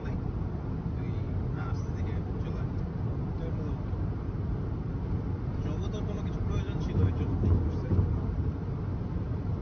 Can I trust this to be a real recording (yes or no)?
yes